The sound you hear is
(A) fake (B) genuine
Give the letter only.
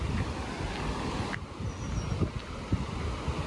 B